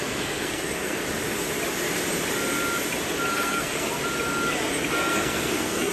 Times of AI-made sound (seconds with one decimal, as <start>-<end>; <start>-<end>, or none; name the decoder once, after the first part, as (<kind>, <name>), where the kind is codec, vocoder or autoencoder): 0.0-1.0 (codec, SNAC); 3.3-4.0; 4.9-5.9